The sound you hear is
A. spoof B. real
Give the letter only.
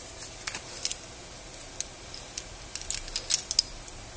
B